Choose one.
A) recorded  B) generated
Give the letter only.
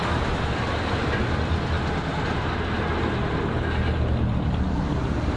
A